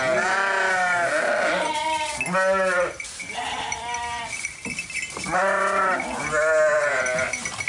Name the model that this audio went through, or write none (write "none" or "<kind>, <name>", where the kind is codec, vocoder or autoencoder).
none